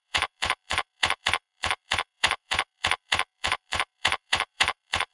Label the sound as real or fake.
fake